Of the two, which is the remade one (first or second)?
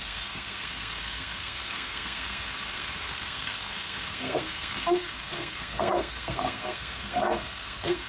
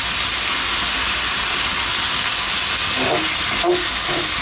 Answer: first